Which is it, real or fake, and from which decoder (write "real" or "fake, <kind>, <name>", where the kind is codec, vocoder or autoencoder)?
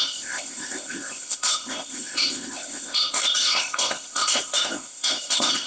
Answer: fake, codec, ZipCodec